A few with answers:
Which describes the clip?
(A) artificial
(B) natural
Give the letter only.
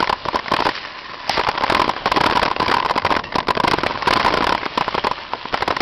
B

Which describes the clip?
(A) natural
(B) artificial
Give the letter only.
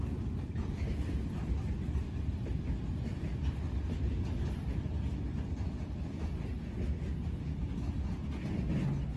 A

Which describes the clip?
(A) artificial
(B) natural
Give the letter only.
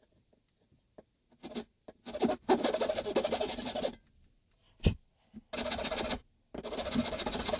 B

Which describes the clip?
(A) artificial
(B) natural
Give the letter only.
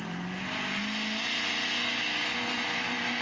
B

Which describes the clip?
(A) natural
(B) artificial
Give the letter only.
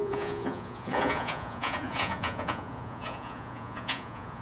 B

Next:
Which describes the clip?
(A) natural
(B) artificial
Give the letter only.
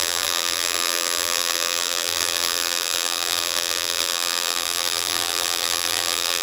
B